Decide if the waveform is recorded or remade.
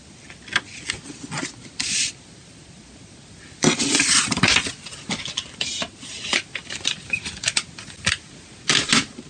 recorded